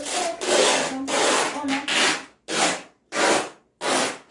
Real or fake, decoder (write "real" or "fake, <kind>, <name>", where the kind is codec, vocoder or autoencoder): real